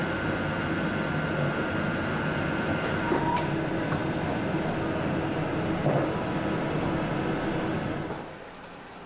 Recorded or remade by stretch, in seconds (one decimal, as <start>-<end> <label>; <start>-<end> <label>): 0.0-9.1 recorded

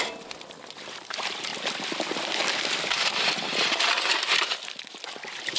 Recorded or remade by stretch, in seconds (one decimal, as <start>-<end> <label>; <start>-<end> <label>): 0.0-5.6 remade